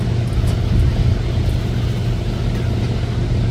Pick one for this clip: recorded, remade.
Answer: recorded